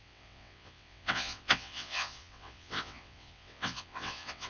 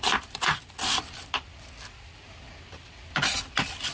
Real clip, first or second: second